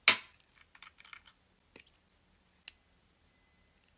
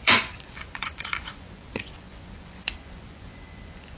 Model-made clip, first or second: second